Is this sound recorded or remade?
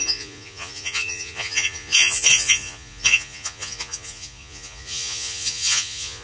remade